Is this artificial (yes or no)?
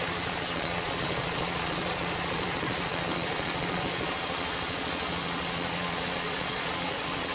yes